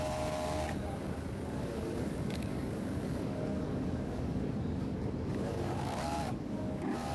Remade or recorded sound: remade